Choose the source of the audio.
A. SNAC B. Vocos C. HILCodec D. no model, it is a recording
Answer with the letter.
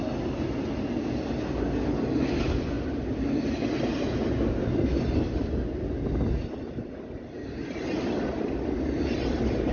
D